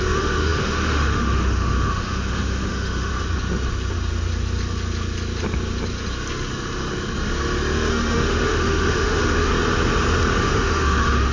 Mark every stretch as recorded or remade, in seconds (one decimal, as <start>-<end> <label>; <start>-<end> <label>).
0.0-3.1 remade; 3.1-7.9 recorded; 7.9-9.5 remade; 9.5-10.4 recorded; 10.4-11.3 remade